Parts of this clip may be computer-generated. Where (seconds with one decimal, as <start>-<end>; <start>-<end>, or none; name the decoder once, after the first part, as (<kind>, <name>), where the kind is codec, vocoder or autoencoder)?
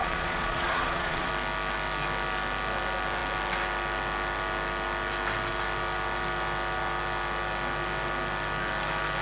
0.0-1.3 (vocoder, Vocos)